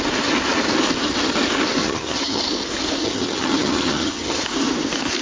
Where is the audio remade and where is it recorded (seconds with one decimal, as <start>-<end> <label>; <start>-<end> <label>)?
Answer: 0.0-1.8 recorded; 1.8-2.4 remade; 2.4-3.0 recorded; 3.0-4.4 remade; 4.4-5.2 recorded